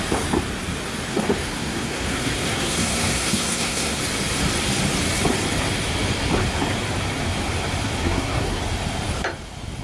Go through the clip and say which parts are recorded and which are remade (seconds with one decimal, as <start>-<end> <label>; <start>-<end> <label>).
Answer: 0.0-1.1 recorded; 1.1-4.0 remade; 4.0-8.0 recorded; 8.0-8.6 remade; 8.6-9.8 recorded